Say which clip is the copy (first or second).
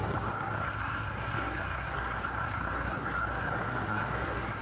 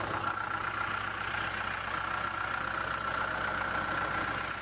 first